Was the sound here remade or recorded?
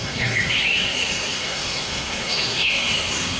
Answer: remade